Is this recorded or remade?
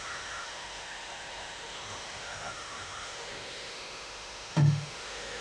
remade